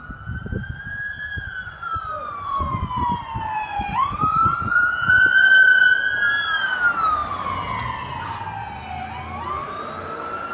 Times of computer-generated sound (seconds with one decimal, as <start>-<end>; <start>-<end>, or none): 1.6-5.2